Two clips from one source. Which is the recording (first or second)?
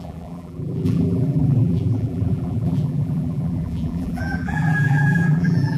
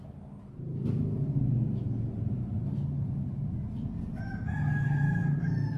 second